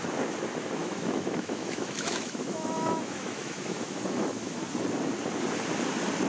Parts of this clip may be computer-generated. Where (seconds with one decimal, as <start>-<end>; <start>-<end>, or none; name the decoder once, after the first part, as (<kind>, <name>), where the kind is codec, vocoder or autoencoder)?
0.8-4.6 (autoencoder, DAC-VAE)